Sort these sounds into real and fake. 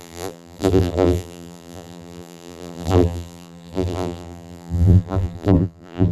fake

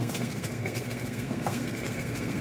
fake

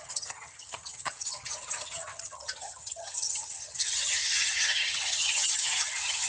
fake